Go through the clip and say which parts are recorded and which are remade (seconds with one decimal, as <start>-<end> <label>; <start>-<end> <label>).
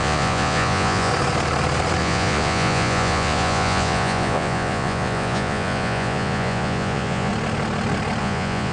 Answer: 0.0-1.1 remade; 1.1-2.0 recorded; 2.0-7.3 remade; 7.3-8.2 recorded; 8.2-8.7 remade